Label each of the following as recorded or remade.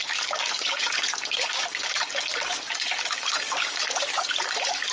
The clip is remade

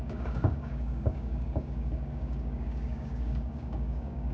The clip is remade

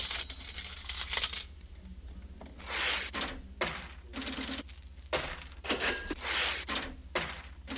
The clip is recorded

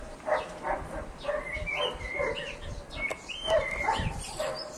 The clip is recorded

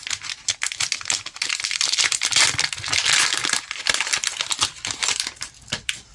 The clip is recorded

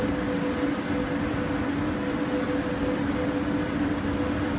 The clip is recorded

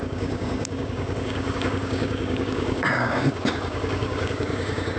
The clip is remade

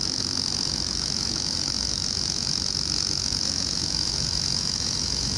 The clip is remade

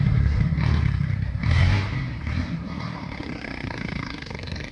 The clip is remade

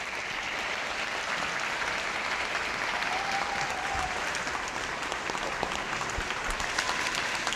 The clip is recorded